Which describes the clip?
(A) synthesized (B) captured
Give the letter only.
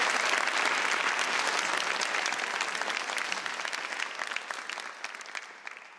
B